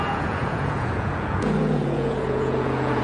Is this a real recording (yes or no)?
no